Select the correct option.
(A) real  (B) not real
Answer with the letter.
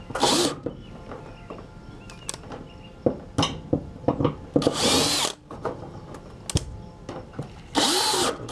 A